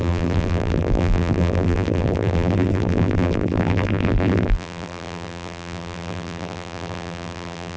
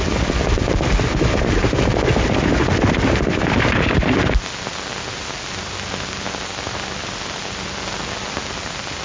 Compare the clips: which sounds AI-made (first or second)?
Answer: first